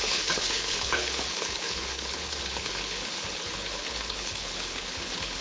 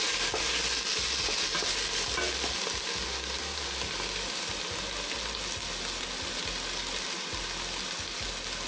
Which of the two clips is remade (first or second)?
first